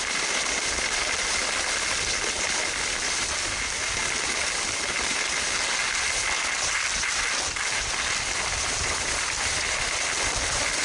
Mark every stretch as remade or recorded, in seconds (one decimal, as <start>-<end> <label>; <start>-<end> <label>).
0.0-10.8 recorded

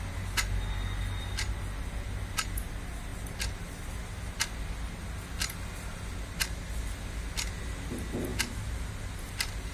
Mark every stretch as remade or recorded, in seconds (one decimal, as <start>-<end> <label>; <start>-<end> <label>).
0.0-9.7 recorded

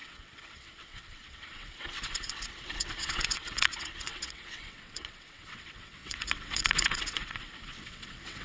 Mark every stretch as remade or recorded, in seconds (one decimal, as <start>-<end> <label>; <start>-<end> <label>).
0.0-8.4 remade

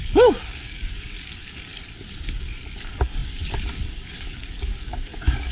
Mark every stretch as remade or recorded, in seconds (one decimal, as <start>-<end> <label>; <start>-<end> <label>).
0.0-1.7 remade; 1.7-2.8 recorded; 2.8-5.5 remade

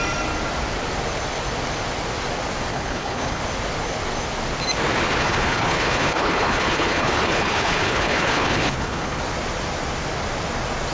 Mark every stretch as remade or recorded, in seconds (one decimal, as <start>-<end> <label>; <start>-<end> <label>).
0.0-2.7 recorded; 2.7-3.4 remade; 3.4-5.2 recorded; 5.2-9.2 remade; 9.2-10.9 recorded